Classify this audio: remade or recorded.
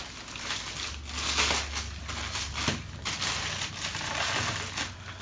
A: recorded